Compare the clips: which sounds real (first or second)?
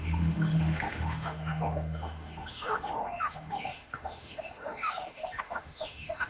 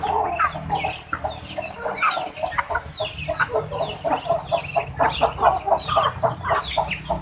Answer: second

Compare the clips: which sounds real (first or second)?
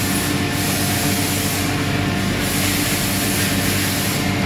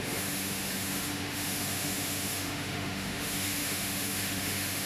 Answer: first